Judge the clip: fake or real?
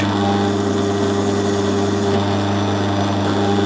real